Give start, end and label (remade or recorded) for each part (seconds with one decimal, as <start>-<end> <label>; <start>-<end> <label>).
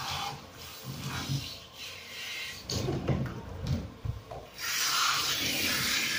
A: 0.0-0.7 remade; 0.7-1.5 recorded; 1.5-6.2 remade